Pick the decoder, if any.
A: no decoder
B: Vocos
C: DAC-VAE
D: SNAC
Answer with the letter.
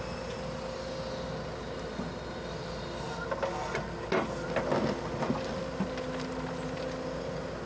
A